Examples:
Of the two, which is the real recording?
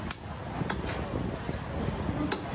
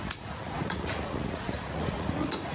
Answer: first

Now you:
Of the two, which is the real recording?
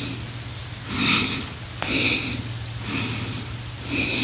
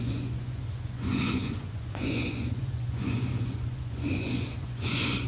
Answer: first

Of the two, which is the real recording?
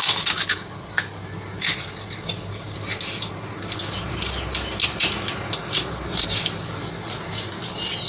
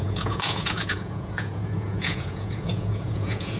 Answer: first